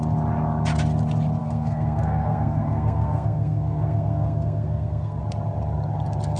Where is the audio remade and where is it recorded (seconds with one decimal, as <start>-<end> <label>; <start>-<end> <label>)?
0.0-1.4 recorded; 1.4-5.2 remade; 5.2-6.4 recorded